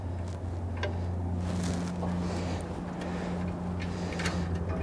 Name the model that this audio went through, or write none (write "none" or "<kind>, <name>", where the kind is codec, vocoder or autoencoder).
none